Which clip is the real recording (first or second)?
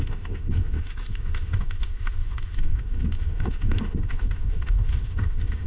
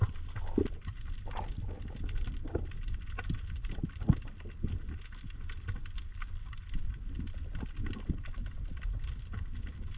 second